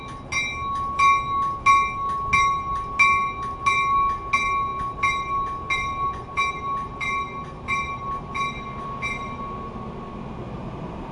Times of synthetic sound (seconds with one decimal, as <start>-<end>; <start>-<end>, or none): none